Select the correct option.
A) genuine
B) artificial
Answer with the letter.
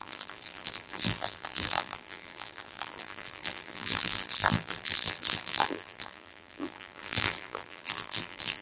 B